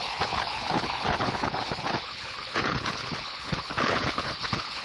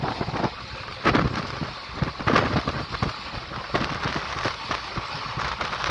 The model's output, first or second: first